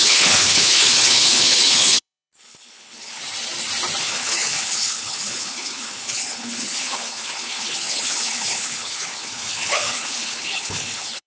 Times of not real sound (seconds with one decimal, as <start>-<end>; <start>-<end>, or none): 0.0-3.2; 4.0-11.3